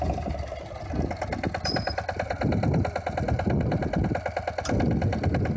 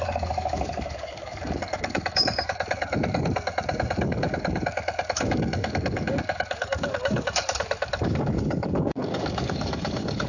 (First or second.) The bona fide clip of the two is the first